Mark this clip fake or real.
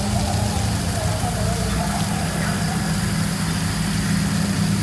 real